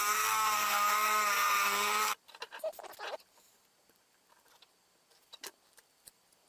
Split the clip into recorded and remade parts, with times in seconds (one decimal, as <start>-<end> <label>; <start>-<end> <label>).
0.0-2.1 remade; 2.1-6.5 recorded